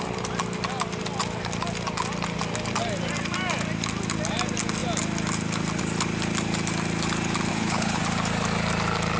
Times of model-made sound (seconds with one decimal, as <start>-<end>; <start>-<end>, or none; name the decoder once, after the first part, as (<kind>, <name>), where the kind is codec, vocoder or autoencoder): 7.5-8.0 (codec, HILCodec)

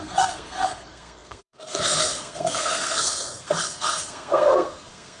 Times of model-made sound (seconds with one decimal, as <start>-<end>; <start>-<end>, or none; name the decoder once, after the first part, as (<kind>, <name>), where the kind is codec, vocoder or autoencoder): 0.0-5.2 (codec, SNAC)

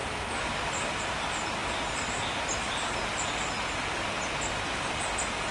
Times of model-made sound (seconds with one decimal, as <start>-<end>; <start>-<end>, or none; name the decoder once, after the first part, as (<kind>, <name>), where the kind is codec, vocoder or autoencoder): none